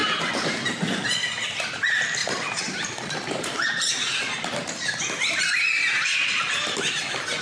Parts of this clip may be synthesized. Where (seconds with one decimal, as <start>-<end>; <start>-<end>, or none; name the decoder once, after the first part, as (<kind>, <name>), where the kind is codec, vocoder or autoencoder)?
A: 1.2-1.7 (vocoder, BigVGAN v2); 2.2-5.0